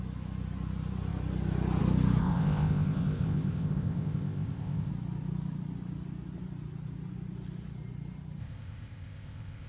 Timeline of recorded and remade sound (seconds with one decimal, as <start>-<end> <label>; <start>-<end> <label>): 0.0-2.2 recorded; 2.2-4.9 remade; 4.9-8.4 recorded; 8.4-9.7 remade